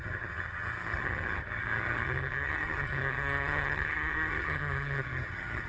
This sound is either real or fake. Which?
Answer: fake